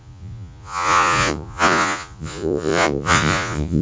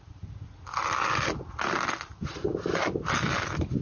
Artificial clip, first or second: first